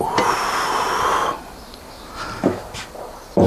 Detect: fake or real real